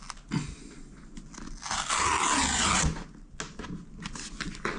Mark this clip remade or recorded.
recorded